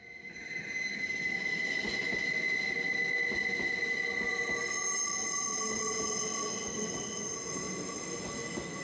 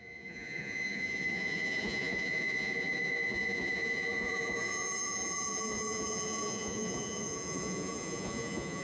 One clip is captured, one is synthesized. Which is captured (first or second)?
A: first